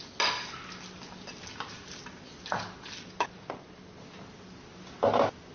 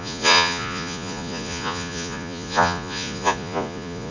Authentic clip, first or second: first